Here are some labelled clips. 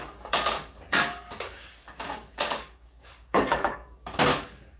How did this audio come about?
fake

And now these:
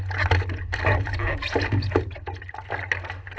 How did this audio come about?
real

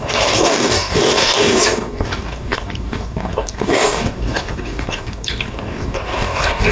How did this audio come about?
fake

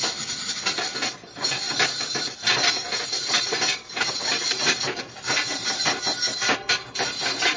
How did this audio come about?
real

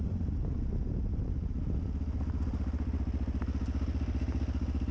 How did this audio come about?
real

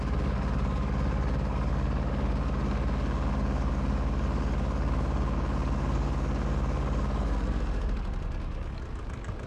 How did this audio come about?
fake